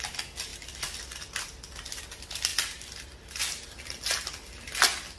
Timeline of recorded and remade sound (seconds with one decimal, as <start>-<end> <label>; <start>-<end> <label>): 0.0-5.2 recorded